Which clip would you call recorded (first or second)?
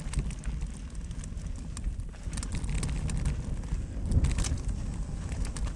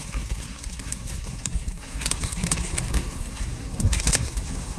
first